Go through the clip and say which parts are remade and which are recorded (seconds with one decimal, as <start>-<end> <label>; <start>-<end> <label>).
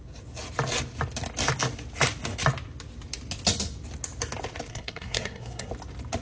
0.0-4.7 recorded; 4.7-5.7 remade; 5.7-6.2 recorded